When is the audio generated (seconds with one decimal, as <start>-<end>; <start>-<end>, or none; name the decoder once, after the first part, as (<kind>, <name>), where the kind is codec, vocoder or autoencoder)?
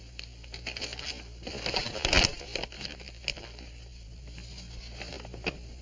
none